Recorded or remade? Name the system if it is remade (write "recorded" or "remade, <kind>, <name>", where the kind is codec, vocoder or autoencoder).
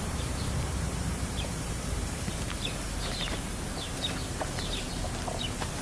remade, vocoder, BigVGAN v2